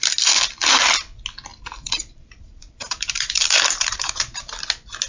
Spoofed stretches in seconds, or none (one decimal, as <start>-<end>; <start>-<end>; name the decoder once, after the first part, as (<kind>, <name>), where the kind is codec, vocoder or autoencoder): 1.5-4.6 (vocoder, BigVGAN v2)